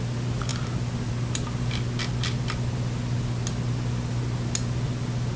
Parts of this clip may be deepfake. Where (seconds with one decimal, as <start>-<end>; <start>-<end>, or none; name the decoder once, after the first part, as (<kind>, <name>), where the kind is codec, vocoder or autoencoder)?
none